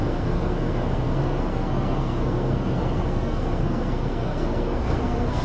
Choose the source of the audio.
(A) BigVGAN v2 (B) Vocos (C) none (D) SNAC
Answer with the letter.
D